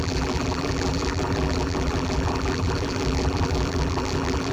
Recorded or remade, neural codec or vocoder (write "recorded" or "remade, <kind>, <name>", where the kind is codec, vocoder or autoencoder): remade, vocoder, BigVGAN v2